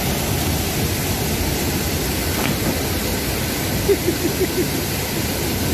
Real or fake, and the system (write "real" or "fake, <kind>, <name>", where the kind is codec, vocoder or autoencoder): real